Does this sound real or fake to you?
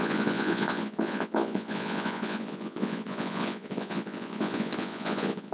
fake